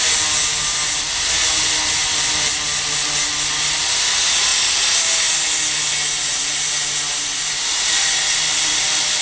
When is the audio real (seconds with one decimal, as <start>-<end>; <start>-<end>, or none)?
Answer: 0.0-9.2